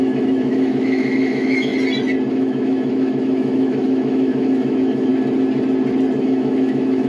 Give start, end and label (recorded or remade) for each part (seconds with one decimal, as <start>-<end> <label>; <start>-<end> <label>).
0.0-1.7 remade; 1.7-2.3 recorded; 2.3-5.1 remade; 5.1-6.2 recorded; 6.2-7.1 remade